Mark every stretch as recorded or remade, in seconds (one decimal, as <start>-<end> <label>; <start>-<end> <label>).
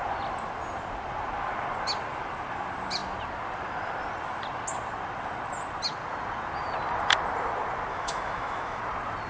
0.0-7.9 recorded; 7.9-8.8 remade; 8.8-9.3 recorded